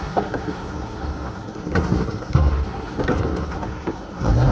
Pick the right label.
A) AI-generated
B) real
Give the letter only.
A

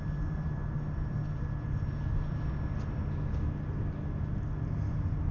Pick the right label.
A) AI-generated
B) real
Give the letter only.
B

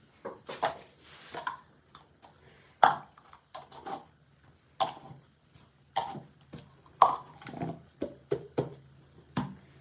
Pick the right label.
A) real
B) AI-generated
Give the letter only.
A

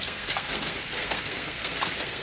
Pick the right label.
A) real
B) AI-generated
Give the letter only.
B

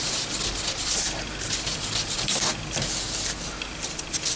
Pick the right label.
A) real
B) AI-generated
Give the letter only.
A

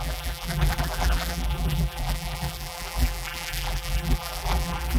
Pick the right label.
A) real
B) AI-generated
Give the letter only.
B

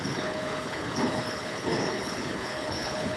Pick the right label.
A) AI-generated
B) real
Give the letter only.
A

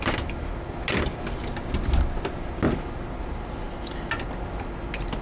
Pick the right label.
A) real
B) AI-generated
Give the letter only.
A